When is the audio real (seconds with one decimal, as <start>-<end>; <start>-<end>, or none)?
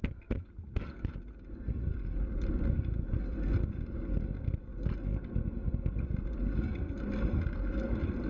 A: 0.0-8.3